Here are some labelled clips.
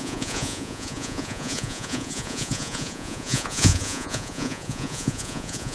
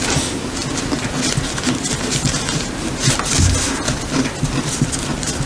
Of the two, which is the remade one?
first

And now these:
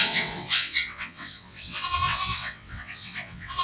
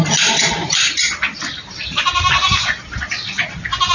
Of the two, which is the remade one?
first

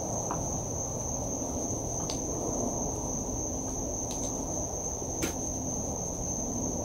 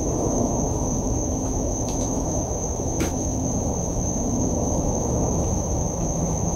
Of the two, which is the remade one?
second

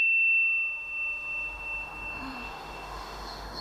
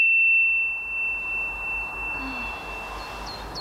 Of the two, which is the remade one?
first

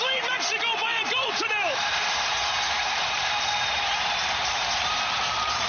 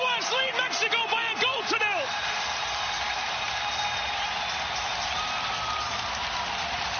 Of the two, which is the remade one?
first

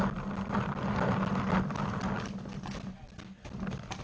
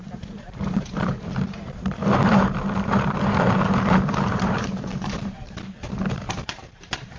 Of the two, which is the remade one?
second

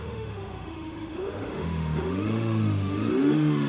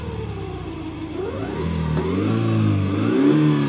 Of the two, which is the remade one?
first